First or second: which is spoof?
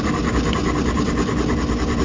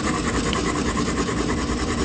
second